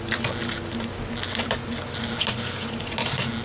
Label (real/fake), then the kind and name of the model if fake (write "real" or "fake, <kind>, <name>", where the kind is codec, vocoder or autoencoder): real